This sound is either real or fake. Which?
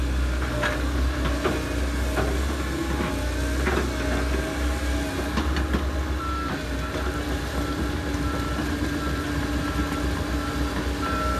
real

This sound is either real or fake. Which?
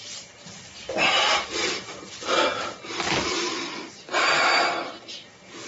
real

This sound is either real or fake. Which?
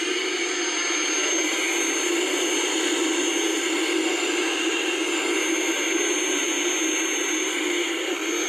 real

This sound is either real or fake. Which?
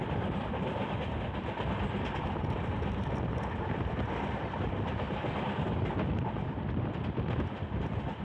real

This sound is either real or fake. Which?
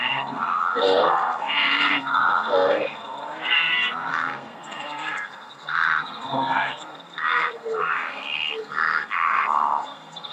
fake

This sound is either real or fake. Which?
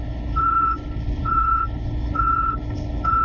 fake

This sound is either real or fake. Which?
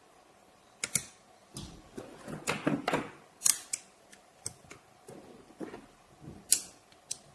real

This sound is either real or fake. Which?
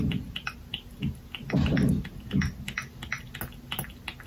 real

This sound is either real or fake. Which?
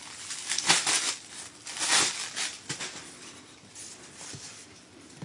real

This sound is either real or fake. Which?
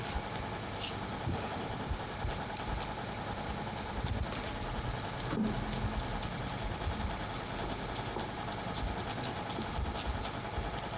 real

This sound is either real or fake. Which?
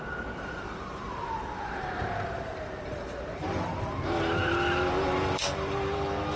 fake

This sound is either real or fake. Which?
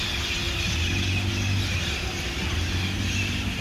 real